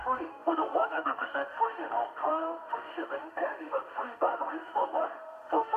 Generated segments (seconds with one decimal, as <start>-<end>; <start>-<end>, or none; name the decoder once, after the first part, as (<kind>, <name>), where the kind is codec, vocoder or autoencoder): 0.0-5.8 (autoencoder, DAC-VAE)